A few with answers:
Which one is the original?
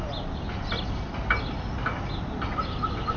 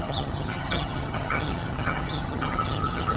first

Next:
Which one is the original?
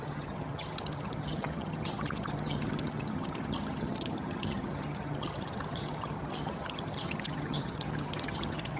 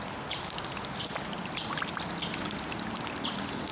second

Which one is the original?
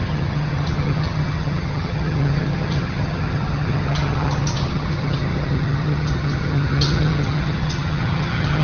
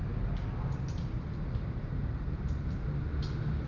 second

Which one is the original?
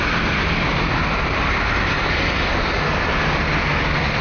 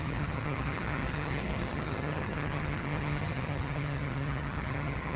first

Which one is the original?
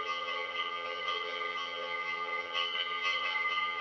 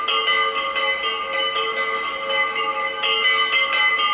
second